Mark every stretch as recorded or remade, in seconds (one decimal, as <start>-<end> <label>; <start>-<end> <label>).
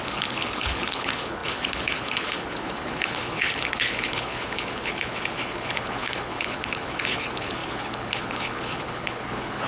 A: 0.0-9.7 remade